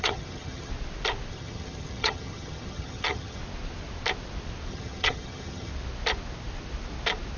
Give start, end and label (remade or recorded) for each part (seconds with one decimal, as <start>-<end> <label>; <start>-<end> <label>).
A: 0.0-0.7 remade; 0.7-1.3 recorded; 1.3-3.4 remade; 3.4-4.7 recorded; 4.7-5.7 remade; 5.7-7.4 recorded